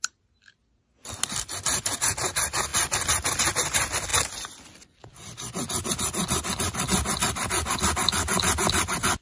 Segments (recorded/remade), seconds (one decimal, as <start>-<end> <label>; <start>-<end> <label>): 0.0-9.2 recorded